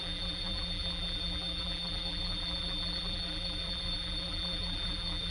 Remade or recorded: remade